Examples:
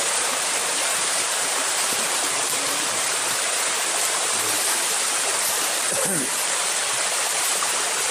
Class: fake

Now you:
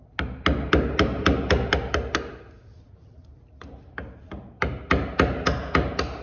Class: real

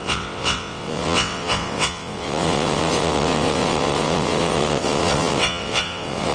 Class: fake